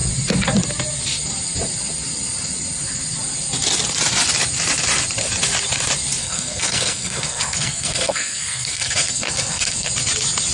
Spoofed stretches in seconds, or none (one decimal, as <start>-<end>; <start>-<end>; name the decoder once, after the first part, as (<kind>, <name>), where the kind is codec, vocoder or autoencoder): 6.2-9.9 (codec, SNAC)

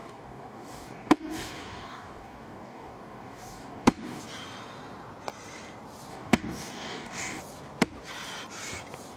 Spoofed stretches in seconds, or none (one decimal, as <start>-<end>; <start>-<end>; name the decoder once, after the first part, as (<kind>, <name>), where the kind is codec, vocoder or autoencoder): 0.0-4.2 (codec, DAC); 6.1-7.4